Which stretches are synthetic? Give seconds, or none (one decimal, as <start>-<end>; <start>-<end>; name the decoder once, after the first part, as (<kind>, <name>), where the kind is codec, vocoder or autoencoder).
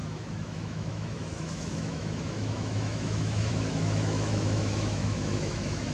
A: 0.0-5.9 (autoencoder, DAC-VAE)